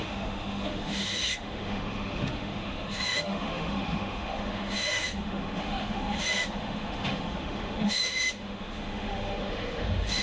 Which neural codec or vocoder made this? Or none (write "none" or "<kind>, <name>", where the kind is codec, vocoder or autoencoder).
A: autoencoder, DAC-VAE